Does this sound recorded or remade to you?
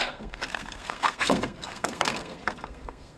remade